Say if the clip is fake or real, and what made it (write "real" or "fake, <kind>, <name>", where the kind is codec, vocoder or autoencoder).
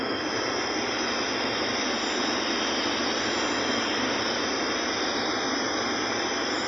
real